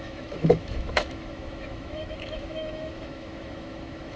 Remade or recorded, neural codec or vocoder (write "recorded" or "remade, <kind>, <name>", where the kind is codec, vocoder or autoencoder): remade, autoencoder, DAC-VAE